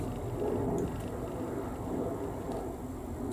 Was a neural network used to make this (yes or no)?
no